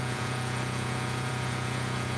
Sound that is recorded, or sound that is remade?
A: remade